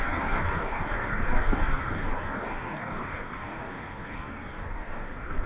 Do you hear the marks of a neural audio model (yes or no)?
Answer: yes